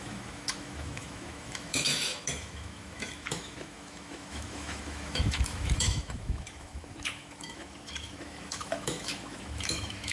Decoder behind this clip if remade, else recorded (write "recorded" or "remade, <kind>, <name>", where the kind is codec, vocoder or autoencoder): remade, autoencoder, DAC-VAE